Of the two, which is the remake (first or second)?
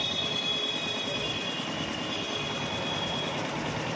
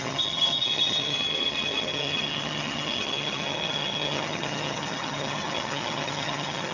second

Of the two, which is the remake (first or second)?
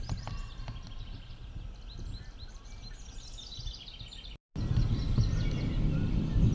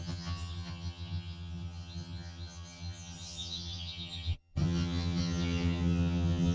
second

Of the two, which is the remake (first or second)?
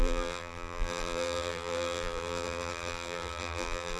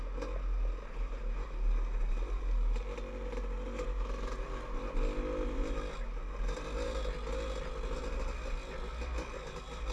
first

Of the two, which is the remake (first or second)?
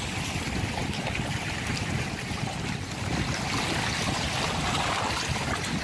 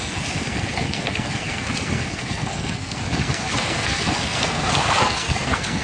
second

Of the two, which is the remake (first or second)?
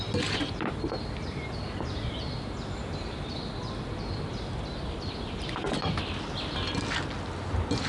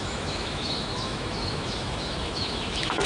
second